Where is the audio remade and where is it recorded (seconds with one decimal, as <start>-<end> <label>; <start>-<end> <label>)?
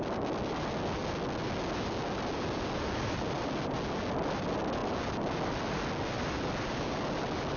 0.0-7.6 recorded